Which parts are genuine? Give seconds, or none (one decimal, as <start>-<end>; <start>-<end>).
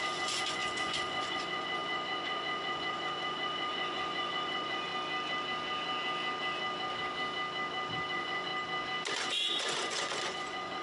4.9-8.1; 8.5-9.1